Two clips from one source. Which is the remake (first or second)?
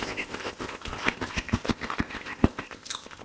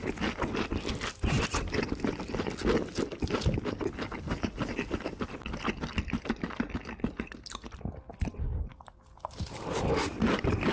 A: first